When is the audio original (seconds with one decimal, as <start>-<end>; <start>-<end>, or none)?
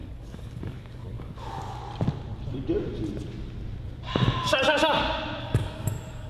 1.8-5.4